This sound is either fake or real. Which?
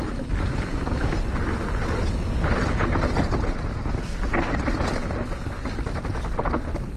real